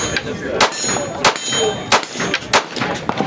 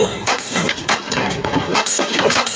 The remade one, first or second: second